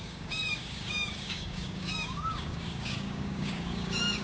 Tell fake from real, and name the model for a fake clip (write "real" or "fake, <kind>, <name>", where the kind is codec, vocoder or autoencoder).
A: fake, codec, DAC